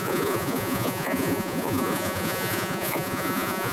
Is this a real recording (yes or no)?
no